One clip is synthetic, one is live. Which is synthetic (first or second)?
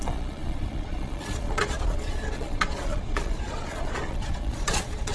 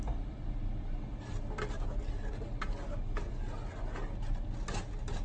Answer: first